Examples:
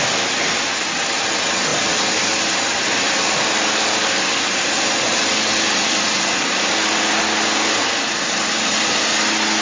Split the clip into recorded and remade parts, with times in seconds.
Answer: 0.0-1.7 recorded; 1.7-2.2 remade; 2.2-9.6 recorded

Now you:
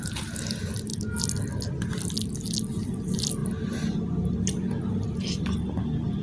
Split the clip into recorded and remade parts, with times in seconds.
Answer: 0.0-3.4 recorded; 3.4-4.1 remade; 4.1-6.2 recorded